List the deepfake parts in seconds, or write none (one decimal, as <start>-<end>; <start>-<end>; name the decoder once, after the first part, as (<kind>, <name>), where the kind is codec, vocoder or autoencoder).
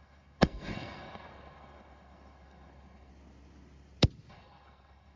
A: 0.0-3.1 (codec, SNAC); 4.3-5.2